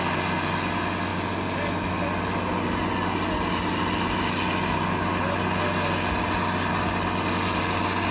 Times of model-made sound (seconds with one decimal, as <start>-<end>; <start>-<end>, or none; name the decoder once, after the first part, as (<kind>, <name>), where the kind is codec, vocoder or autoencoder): none